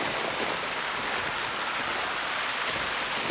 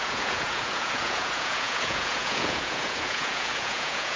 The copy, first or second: second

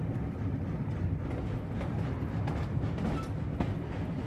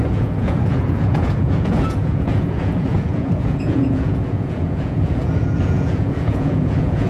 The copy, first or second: second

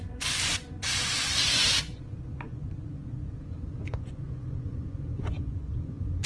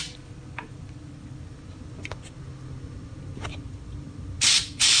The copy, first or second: first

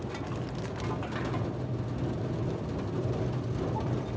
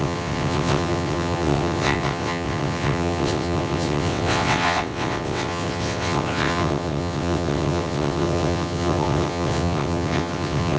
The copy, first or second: second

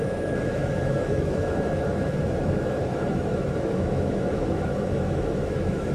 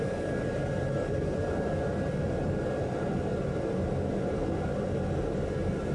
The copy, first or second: first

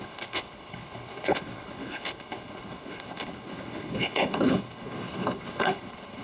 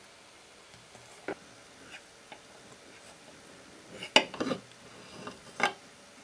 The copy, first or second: first